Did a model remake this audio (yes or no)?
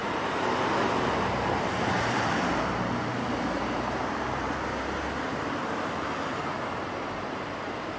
yes